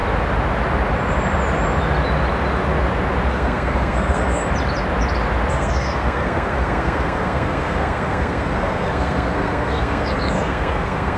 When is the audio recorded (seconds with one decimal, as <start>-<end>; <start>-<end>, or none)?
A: 0.0-3.3; 4.4-5.5